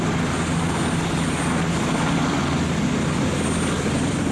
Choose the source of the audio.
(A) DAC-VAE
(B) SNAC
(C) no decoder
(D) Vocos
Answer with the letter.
C